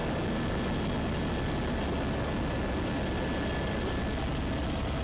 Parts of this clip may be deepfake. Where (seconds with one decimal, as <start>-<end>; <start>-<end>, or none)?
none